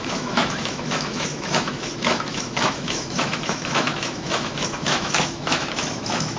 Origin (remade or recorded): remade